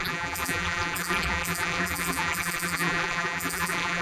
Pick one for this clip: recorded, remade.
remade